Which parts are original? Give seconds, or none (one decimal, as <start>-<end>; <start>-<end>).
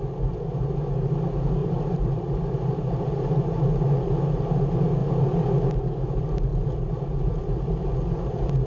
0.0-1.6; 2.2-5.0; 5.5-8.7